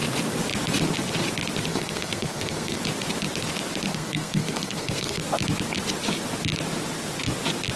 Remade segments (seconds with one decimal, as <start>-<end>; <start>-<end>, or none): 1.7-2.8; 3.9-5.2